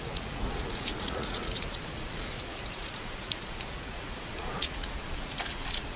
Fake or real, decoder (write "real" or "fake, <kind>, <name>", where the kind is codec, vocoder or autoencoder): fake, vocoder, Vocos